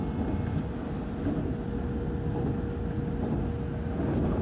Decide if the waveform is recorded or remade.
recorded